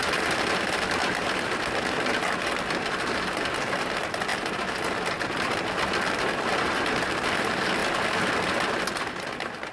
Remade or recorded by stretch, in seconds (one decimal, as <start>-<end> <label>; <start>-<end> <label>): 0.0-9.7 recorded